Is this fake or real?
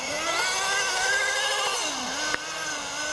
real